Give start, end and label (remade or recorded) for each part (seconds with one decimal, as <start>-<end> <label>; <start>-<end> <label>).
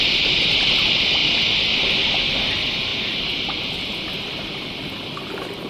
0.0-2.9 recorded; 2.9-4.2 remade; 4.2-5.7 recorded